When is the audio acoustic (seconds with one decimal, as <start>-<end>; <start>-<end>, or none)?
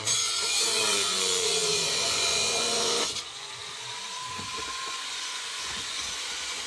none